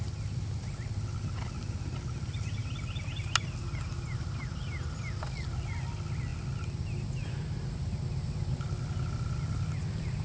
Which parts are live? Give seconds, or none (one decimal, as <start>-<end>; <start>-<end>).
0.0-10.2